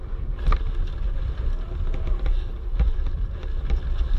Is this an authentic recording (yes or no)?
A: yes